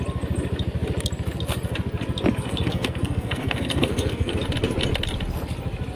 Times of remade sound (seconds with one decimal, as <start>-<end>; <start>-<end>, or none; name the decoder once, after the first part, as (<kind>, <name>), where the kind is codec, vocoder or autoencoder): 2.4-4.3 (codec, SNAC)